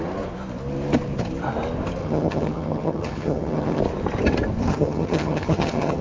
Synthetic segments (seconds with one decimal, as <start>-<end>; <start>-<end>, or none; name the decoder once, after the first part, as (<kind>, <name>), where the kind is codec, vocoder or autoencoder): 2.0-3.8 (vocoder, HiFi-GAN); 4.7-6.0